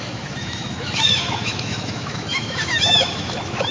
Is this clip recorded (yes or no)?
no